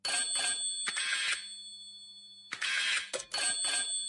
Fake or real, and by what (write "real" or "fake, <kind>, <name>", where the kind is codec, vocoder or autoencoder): real